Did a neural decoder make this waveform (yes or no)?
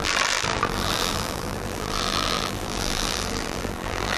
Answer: yes